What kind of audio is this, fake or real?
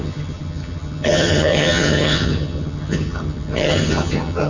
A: fake